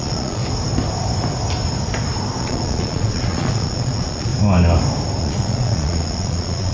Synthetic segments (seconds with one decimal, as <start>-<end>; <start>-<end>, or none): 0.0-0.4; 2.4-4.3; 5.2-6.7